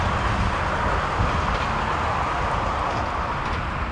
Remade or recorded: recorded